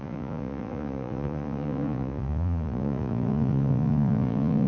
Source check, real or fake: fake